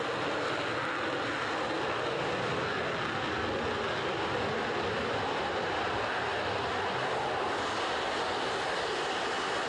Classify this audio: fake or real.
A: real